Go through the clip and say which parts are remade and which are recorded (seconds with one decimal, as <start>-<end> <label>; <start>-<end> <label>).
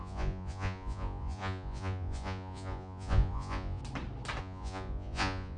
0.0-3.8 remade; 3.8-4.4 recorded; 4.4-5.6 remade